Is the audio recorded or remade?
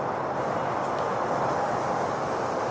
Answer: recorded